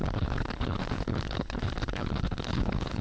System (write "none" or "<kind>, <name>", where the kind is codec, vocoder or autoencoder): codec, HILCodec